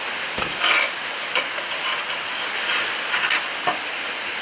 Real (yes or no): yes